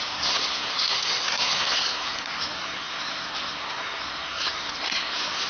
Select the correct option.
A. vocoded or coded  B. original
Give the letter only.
A